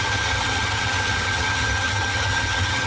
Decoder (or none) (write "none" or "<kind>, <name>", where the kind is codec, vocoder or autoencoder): vocoder, HiFi-GAN